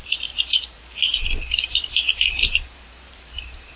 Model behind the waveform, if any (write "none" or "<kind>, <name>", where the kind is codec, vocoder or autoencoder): vocoder, BigVGAN v2